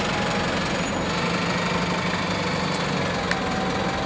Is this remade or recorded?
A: recorded